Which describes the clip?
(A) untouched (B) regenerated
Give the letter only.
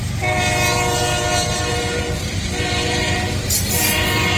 B